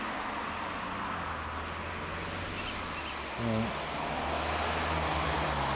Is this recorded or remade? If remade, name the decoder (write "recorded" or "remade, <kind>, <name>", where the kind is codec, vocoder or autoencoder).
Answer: recorded